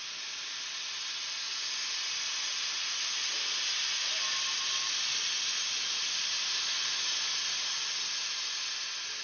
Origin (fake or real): real